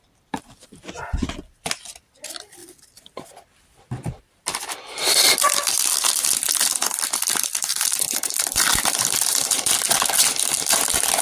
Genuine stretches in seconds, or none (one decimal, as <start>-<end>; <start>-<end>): none